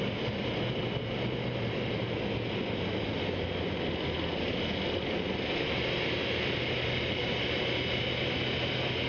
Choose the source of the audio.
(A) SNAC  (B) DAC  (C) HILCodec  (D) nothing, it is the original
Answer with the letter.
D